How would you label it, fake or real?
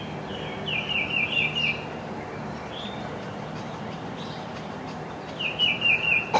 real